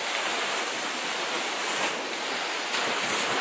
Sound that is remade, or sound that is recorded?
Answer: recorded